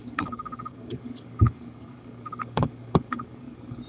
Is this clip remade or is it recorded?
remade